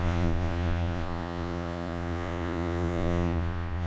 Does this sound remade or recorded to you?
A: remade